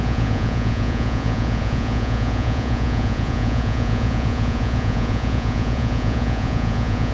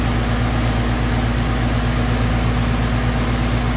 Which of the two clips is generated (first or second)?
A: first